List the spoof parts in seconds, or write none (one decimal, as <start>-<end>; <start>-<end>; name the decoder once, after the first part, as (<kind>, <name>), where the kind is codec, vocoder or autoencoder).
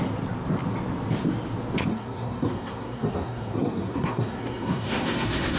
1.9-5.6 (codec, SNAC)